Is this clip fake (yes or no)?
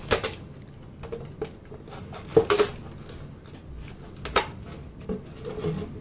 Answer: no